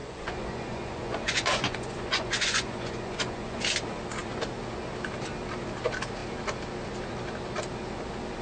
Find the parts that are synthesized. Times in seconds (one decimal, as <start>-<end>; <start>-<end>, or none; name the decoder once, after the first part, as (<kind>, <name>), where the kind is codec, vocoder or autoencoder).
0.0-3.6 (vocoder, Vocos)